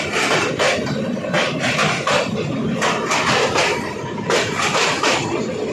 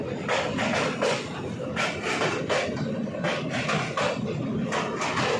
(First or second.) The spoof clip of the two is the first